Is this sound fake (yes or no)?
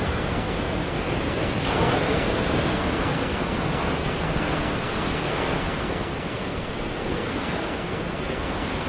yes